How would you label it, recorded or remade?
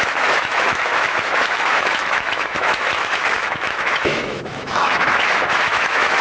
remade